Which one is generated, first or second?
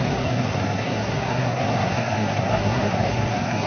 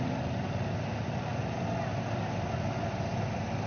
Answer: first